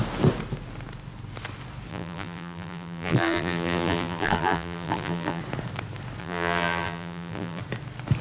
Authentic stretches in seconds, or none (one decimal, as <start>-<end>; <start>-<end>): 0.0-1.9; 5.4-6.2; 7.6-8.2